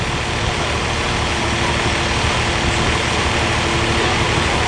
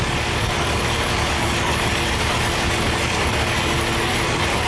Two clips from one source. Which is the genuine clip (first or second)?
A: first